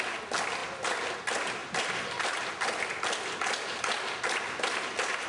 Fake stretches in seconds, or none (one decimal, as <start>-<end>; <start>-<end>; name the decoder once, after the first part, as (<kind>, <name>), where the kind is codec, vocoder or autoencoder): 1.6-2.5 (vocoder, BigVGAN v2)